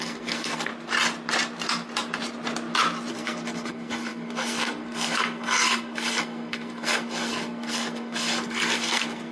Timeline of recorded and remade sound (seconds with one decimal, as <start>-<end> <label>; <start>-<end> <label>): 0.0-0.7 remade; 0.7-3.1 recorded; 3.1-9.3 remade